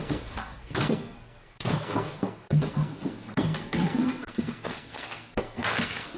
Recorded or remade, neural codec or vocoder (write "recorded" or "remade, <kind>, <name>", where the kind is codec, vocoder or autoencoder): remade, codec, SNAC